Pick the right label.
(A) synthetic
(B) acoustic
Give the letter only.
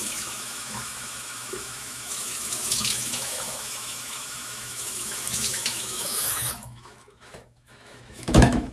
A